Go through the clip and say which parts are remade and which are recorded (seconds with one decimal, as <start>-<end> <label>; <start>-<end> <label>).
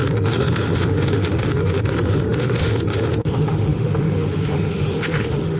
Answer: 0.0-5.6 remade